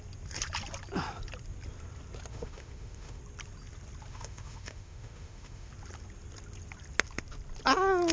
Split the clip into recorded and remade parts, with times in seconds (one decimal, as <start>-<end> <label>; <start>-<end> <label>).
0.0-2.3 recorded; 2.3-3.2 remade; 3.2-4.1 recorded; 4.1-5.7 remade; 5.7-8.1 recorded